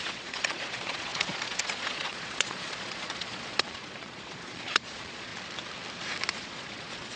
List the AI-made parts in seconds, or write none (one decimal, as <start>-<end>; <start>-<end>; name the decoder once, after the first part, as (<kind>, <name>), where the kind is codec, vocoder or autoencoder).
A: 0.0-5.3 (vocoder, Vocos); 6.3-7.2